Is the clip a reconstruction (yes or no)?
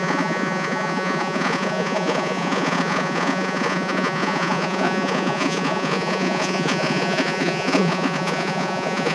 yes